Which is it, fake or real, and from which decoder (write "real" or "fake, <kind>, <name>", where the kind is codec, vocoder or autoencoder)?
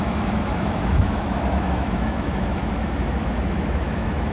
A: fake, autoencoder, DAC-VAE